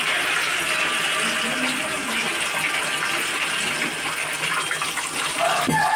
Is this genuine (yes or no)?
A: yes